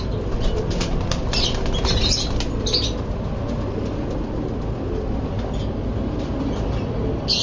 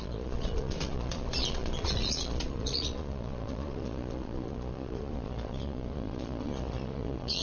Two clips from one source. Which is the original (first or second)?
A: first